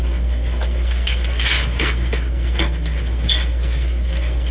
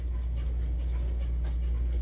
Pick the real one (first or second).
second